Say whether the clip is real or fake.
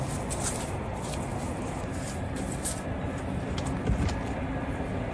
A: real